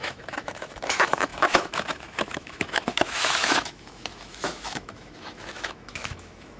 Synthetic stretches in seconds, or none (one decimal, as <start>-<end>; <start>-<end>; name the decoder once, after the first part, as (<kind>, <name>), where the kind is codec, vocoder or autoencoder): 0.0-6.6 (autoencoder, DAC-VAE)